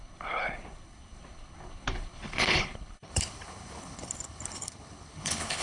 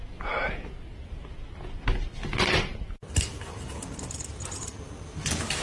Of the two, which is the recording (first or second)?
second